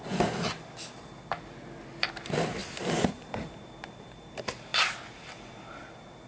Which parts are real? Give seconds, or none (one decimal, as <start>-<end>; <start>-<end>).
0.0-2.6; 3.5-4.7; 5.8-6.3